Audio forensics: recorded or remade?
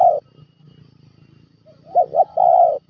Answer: recorded